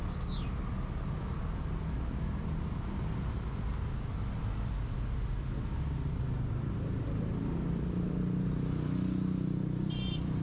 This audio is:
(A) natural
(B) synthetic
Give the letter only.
A